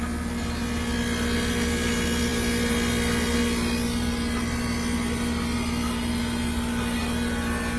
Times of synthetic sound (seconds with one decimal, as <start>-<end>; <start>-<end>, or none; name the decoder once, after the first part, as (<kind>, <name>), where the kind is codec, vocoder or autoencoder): none